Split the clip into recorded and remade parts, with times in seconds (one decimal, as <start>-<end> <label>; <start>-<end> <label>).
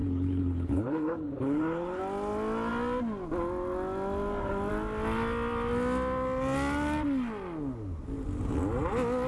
0.0-2.0 remade; 2.0-9.3 recorded